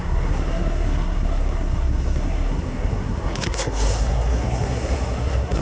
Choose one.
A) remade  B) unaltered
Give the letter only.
A